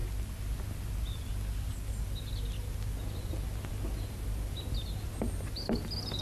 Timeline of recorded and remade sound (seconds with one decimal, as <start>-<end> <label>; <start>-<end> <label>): 0.0-6.2 recorded